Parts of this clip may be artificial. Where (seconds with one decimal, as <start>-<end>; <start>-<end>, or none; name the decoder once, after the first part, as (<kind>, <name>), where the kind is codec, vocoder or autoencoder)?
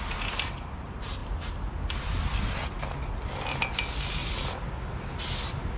none